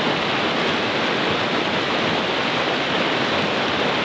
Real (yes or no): yes